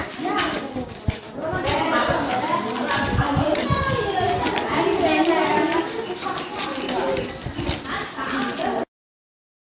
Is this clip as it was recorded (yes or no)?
yes